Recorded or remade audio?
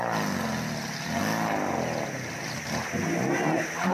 recorded